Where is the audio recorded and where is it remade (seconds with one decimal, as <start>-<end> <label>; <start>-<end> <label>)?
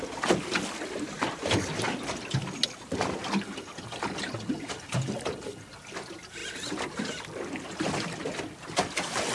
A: 0.0-9.3 recorded